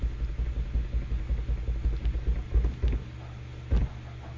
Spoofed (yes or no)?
no